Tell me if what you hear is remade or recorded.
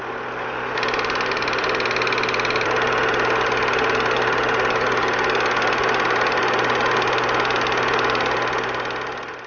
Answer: recorded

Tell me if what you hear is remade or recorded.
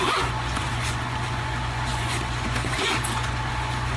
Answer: remade